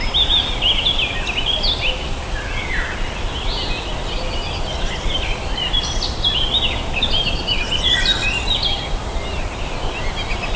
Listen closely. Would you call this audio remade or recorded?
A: recorded